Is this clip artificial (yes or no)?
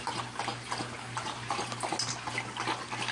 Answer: no